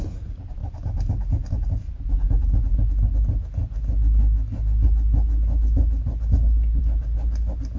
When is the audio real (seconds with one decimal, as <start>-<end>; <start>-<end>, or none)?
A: 0.0-7.8